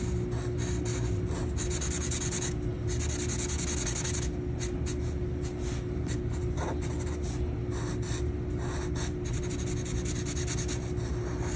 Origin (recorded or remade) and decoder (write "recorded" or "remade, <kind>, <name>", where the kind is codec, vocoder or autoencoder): recorded